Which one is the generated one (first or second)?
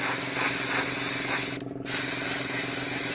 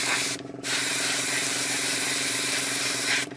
second